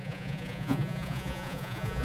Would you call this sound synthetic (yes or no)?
yes